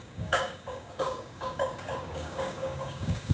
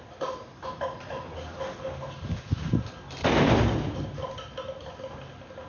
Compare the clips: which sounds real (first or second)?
second